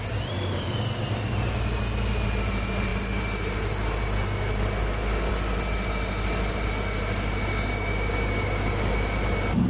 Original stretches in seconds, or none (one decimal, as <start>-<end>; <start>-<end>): 0.0-9.7